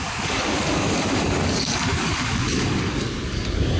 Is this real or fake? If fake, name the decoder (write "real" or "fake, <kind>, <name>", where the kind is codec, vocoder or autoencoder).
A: fake, codec, DAC